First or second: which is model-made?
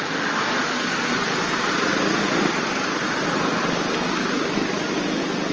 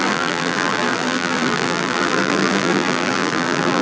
second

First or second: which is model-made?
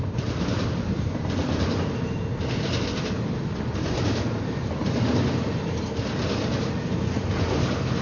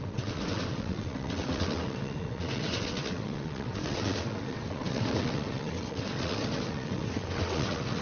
second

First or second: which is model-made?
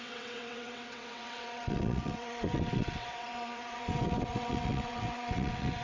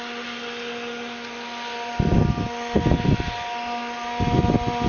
first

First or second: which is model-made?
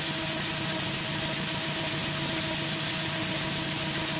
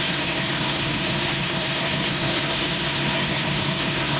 second